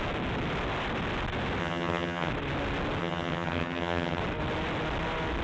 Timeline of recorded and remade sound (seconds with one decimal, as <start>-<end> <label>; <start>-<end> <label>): 0.0-1.6 recorded; 1.6-2.3 remade; 2.3-3.0 recorded; 3.0-4.2 remade; 4.2-5.4 recorded